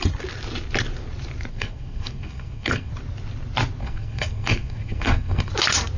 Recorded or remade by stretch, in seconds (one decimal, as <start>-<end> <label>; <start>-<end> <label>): 0.0-1.5 recorded; 1.5-2.9 remade; 2.9-3.8 recorded; 3.8-5.5 remade; 5.5-6.0 recorded